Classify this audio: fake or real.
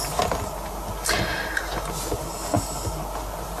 real